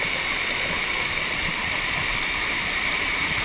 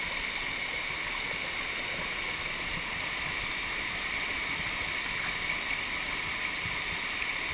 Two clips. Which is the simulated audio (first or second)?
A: first